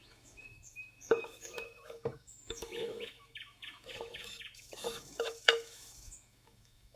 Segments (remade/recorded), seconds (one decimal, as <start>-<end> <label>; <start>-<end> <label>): 0.0-7.0 remade